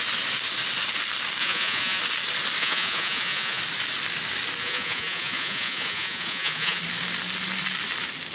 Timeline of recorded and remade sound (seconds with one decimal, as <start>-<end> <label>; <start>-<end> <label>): 0.0-1.4 recorded; 1.4-2.0 remade; 2.0-2.6 recorded; 2.6-3.6 remade; 3.6-4.6 recorded; 4.6-6.8 remade; 6.8-8.3 recorded